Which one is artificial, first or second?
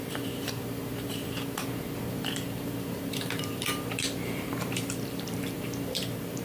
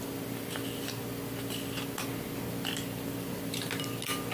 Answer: first